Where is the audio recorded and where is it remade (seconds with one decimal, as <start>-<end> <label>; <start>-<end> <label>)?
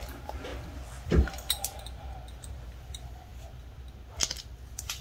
0.0-5.0 recorded